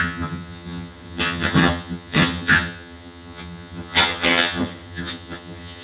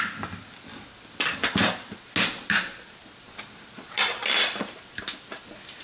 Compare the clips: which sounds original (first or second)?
second